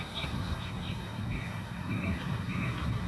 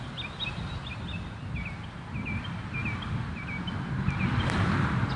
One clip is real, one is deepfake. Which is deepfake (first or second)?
first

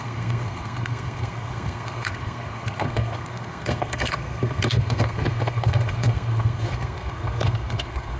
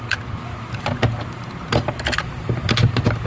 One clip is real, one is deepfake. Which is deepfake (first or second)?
first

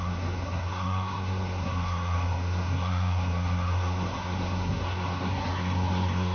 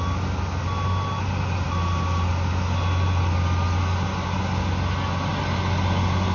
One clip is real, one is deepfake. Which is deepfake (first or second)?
first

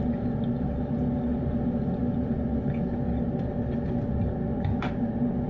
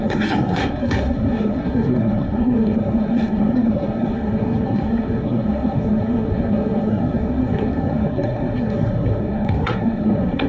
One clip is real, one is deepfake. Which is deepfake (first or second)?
second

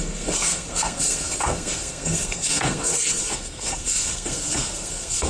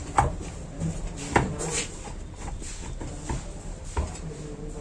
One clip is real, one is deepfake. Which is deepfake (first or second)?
first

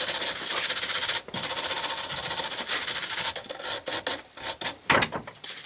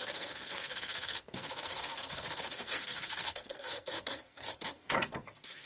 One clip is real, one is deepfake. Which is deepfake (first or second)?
second